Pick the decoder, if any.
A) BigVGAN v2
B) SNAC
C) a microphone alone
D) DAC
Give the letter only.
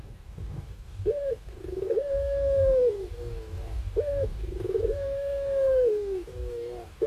D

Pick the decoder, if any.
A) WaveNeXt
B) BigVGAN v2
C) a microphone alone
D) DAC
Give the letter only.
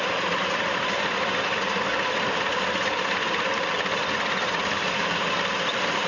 C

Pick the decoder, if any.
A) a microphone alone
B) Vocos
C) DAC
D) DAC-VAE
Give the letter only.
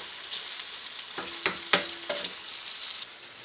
A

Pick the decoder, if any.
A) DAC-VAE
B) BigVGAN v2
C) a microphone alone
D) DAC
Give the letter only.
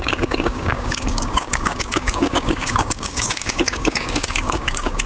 D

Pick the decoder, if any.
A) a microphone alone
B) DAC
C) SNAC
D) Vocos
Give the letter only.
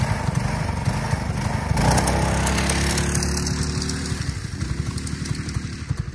A